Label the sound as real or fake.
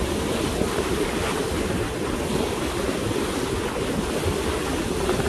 real